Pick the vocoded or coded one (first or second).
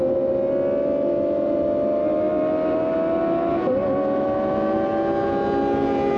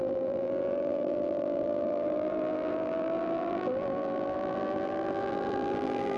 second